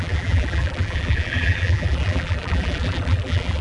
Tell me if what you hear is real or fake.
fake